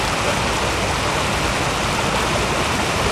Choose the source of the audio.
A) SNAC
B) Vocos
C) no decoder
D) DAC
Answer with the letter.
C